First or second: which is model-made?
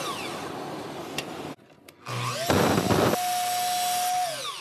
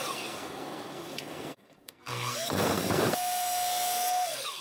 second